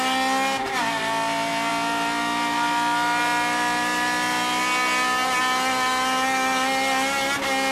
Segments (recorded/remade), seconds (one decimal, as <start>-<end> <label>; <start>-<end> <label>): 0.0-7.7 recorded